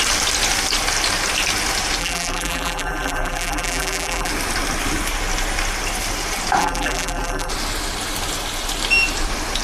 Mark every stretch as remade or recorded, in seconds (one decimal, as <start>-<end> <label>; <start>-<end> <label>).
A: 0.0-2.0 recorded; 2.0-4.3 remade; 4.3-6.6 recorded; 6.6-7.5 remade; 7.5-9.6 recorded